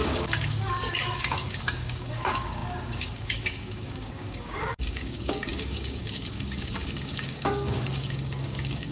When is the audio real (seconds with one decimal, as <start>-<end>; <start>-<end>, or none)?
none